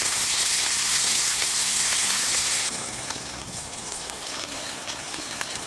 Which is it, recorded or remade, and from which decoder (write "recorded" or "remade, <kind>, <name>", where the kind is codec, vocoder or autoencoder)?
remade, codec, SNAC